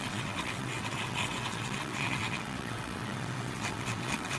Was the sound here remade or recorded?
remade